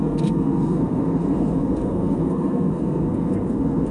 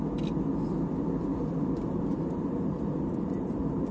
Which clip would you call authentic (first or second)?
second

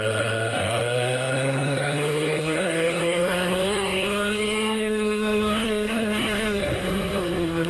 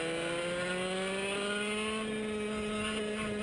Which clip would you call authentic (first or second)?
second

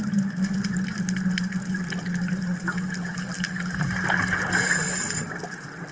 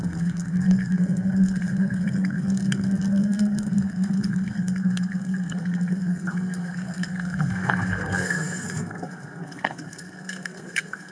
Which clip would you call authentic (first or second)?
first